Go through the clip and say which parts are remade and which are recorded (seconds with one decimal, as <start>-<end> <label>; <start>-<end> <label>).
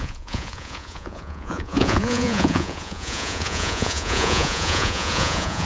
0.0-5.7 remade